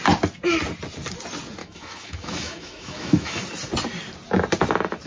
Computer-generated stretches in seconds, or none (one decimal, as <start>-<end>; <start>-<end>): 1.6-3.5